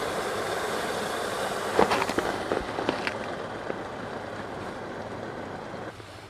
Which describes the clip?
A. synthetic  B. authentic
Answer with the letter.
B